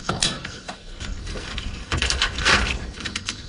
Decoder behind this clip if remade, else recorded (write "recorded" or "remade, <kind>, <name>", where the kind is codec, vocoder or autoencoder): remade, codec, SNAC